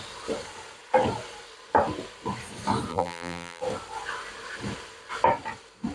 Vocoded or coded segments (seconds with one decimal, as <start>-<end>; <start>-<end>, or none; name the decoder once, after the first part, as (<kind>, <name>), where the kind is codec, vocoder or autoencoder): 2.9-3.6 (vocoder, BigVGAN v2)